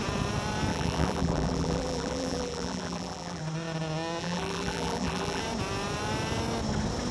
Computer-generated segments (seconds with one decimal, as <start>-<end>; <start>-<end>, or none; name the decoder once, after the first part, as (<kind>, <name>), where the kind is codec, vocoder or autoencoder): 0.7-3.4 (vocoder, BigVGAN v2); 4.2-5.4

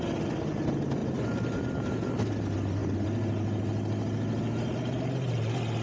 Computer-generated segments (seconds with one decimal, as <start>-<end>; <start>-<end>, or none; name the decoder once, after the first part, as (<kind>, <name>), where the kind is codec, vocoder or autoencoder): none

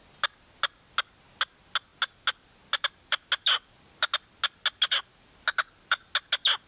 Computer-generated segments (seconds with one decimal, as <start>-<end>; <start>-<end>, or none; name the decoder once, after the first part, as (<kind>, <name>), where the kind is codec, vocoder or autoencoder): none

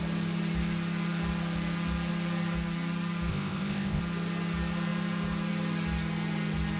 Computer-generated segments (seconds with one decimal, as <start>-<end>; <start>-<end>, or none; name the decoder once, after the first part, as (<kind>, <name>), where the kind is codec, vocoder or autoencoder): 3.3-4.0 (codec, ZipCodec)

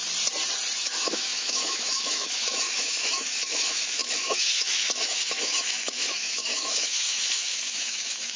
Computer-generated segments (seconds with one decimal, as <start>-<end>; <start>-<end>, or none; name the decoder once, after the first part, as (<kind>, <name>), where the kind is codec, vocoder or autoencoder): 0.8-8.4 (autoencoder, DAC-VAE)

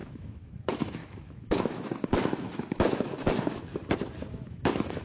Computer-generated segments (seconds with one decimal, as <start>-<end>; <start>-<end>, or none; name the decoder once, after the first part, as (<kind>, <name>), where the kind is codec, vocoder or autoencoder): 0.0-3.7 (autoencoder, DAC-VAE); 4.3-5.0

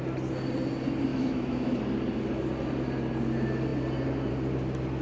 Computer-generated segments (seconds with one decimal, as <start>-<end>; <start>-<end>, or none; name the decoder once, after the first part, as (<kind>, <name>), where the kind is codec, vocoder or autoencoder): 1.1-1.8 (autoencoder, DAC-VAE)